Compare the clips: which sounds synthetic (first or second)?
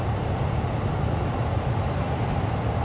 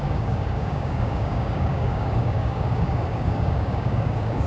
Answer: second